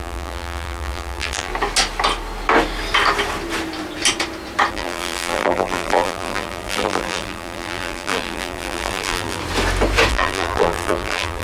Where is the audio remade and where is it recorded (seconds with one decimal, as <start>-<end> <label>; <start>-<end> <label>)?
0.0-1.5 remade; 1.5-4.7 recorded; 4.7-9.4 remade; 9.4-10.1 recorded; 10.1-11.4 remade